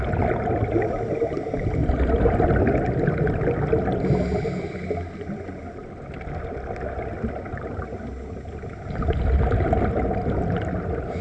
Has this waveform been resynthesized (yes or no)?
no